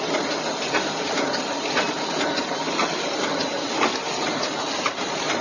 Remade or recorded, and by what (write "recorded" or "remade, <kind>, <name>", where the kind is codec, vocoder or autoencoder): remade, vocoder, BigVGAN v2